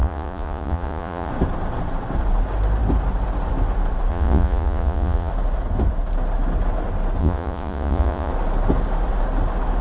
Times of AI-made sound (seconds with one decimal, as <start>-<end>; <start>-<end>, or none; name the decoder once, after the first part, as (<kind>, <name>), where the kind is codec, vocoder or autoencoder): 0.0-1.3 (vocoder, Vocos); 4.1-5.3; 7.2-8.3